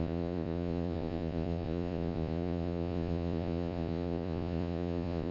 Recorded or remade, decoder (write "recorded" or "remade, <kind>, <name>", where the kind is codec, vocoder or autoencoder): remade, vocoder, Vocos